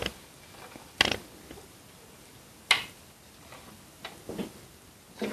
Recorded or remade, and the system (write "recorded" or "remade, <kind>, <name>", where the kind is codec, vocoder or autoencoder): recorded